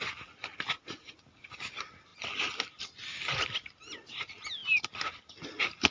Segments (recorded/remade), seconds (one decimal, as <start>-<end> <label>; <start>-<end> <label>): 0.0-5.9 recorded